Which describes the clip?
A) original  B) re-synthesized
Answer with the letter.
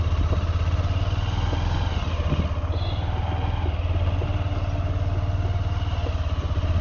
A